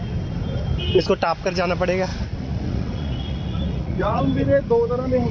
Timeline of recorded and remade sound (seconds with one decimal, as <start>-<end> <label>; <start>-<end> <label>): 0.0-2.1 recorded; 2.1-4.2 remade; 4.2-5.3 recorded